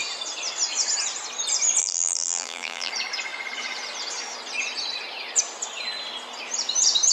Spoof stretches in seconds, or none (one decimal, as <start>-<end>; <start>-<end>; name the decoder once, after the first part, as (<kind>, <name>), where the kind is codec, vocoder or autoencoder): 1.8-2.9 (vocoder, BigVGAN v2)